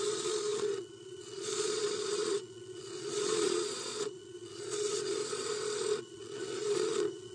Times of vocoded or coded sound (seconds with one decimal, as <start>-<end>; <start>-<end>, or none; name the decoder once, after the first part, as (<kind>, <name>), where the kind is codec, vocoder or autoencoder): 0.0-5.2 (vocoder, Vocos); 6.0-7.3